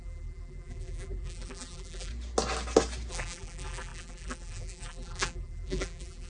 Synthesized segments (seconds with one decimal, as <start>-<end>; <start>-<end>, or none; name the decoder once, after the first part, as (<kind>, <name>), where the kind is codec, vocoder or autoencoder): 0.0-2.1 (vocoder, BigVGAN v2); 3.1-6.3